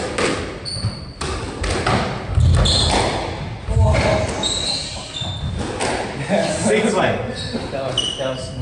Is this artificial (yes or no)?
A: no